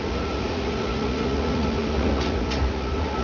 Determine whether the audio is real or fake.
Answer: fake